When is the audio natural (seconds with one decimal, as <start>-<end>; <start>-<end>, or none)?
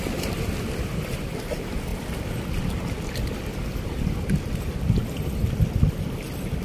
0.0-6.6